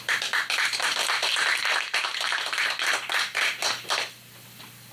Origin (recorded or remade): recorded